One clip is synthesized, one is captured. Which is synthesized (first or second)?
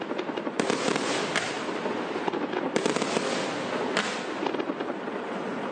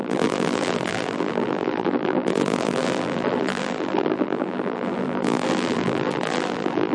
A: second